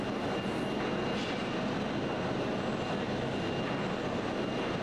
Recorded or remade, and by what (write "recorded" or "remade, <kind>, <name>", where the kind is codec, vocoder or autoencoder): recorded